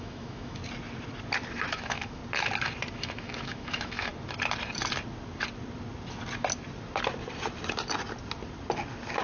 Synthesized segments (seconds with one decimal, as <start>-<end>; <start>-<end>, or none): 0.0-0.6; 1.7-2.2; 2.9-4.1